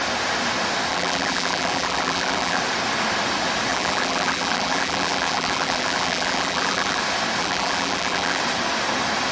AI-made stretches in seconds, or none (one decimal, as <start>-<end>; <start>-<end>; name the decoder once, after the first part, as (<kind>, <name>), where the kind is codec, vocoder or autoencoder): 0.9-2.6 (vocoder, BigVGAN v2); 3.7-7.0; 7.4-8.4